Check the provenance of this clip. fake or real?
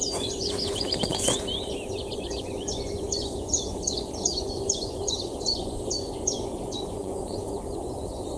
fake